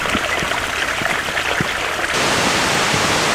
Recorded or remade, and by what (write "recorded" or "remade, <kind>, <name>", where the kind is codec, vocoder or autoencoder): recorded